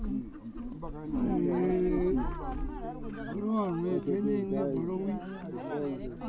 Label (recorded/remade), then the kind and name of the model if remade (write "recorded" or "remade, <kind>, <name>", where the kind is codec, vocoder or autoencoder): recorded